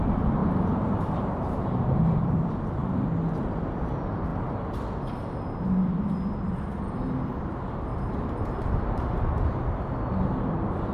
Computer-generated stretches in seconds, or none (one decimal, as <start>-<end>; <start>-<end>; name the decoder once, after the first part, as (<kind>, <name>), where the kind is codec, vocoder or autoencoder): 0.4-2.5 (vocoder, BigVGAN v2); 7.9-9.4